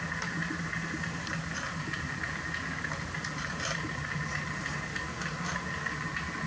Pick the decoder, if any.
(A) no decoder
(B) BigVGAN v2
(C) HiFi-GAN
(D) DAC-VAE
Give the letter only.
A